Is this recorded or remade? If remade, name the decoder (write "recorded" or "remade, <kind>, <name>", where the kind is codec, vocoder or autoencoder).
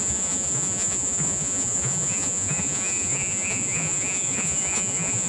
remade, vocoder, Vocos